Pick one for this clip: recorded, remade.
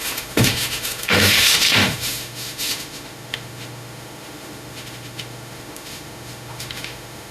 remade